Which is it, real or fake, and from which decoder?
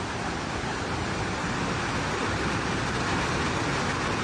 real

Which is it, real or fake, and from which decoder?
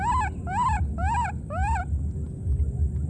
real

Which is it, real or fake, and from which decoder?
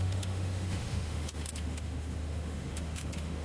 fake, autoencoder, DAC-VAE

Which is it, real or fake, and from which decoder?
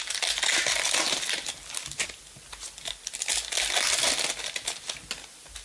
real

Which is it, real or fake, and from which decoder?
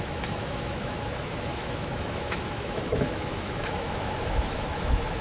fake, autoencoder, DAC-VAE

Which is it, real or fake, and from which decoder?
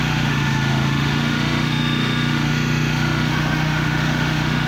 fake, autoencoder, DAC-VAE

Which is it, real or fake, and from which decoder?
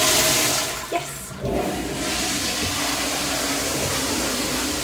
real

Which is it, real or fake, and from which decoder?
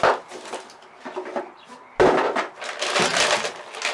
real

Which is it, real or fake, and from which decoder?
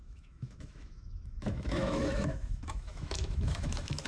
fake, autoencoder, DAC-VAE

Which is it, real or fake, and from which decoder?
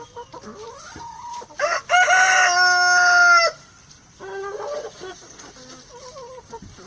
real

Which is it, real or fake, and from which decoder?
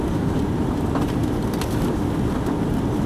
real